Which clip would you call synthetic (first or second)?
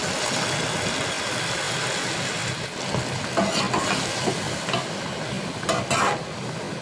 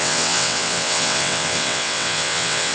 second